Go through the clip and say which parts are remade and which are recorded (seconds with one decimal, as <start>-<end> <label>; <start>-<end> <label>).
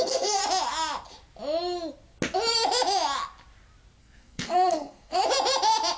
0.0-0.4 remade; 0.4-4.0 recorded; 4.0-5.2 remade; 5.2-6.0 recorded